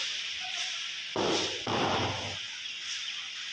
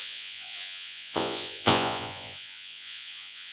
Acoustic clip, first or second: first